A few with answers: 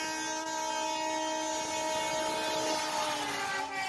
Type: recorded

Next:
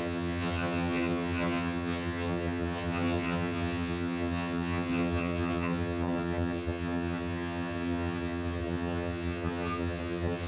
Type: remade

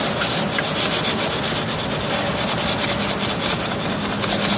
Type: recorded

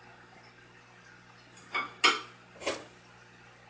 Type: recorded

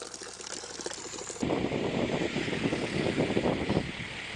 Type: recorded